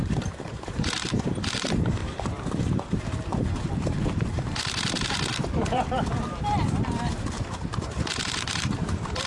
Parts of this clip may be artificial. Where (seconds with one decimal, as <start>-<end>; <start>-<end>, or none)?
0.0-9.3